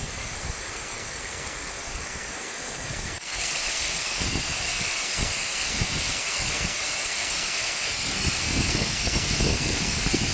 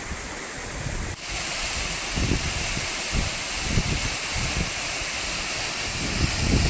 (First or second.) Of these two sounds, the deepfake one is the first